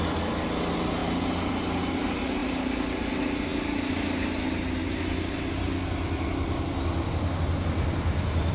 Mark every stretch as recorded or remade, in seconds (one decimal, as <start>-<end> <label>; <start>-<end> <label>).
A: 0.0-8.5 recorded